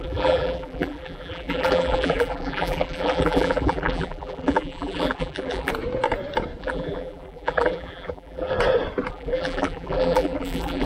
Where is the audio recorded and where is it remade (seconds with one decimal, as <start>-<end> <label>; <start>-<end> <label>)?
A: 0.0-5.7 remade; 5.7-6.6 recorded; 6.6-8.5 remade; 8.5-9.1 recorded; 9.1-10.9 remade

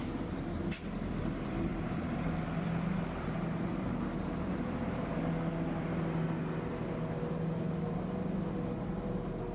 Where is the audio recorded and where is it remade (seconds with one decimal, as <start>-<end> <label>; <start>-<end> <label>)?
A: 0.0-1.7 recorded; 1.7-2.4 remade; 2.4-9.5 recorded